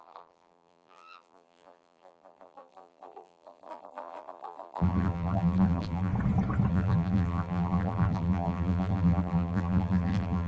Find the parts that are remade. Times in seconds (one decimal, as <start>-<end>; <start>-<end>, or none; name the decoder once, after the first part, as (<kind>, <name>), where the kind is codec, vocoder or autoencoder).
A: 0.0-6.1 (vocoder, BigVGAN v2); 6.7-10.5